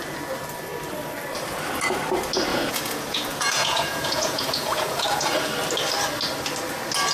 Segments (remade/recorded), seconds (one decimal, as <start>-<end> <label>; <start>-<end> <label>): 0.0-2.5 recorded; 2.5-5.5 remade; 5.5-7.1 recorded